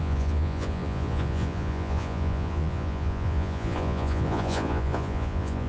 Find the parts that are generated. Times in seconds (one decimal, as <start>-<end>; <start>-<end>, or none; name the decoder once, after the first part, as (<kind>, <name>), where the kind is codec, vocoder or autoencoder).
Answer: 0.0-5.7 (vocoder, Vocos)